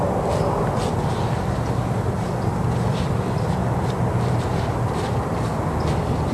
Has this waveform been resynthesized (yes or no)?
no